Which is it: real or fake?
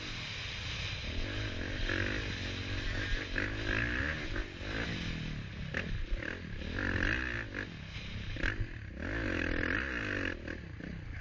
real